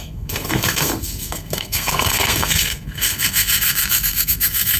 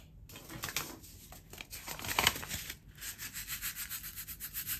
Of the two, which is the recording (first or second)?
second